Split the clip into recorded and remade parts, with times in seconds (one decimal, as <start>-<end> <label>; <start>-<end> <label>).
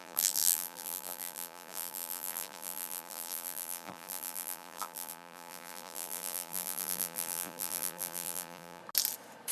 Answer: 0.0-8.8 remade; 8.8-9.5 recorded